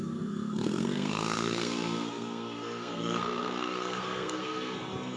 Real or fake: fake